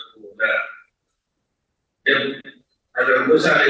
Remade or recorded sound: recorded